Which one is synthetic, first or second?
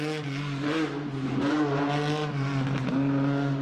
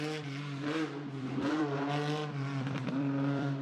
second